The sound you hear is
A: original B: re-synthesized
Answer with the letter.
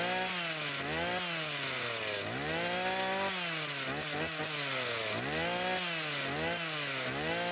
A